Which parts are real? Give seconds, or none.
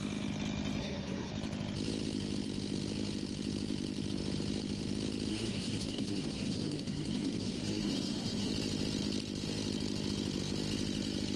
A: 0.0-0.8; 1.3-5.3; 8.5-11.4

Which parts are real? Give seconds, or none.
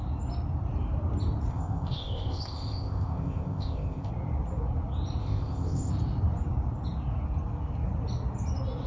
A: 0.0-1.5; 4.1-5.2; 5.9-8.9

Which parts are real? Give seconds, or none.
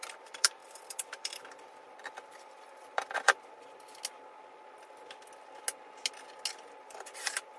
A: 3.9-6.8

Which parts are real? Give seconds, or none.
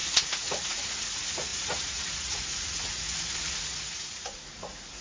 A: none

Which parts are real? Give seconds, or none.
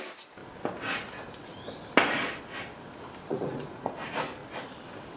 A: 0.0-3.2; 3.9-5.2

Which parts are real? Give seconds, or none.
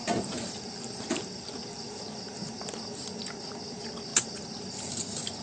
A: 2.0-5.4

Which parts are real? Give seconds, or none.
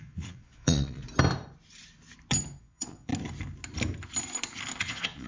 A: 1.0-2.6; 3.1-4.8